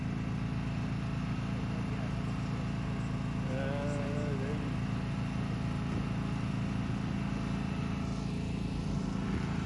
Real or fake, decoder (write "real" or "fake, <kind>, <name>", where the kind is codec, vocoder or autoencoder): real